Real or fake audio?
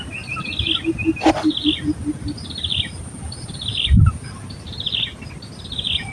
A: real